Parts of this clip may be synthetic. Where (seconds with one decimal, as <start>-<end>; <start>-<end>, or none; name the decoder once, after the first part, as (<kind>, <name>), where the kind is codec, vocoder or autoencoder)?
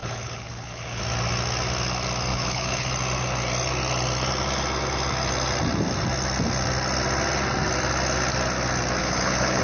0.0-1.0 (codec, HILCodec); 2.3-2.9; 9.0-9.6